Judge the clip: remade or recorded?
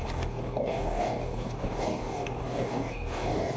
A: remade